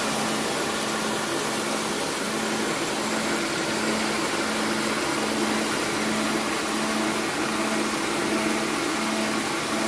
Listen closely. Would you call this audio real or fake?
real